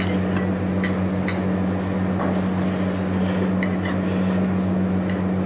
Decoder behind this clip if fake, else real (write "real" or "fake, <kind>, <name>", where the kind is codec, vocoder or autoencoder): real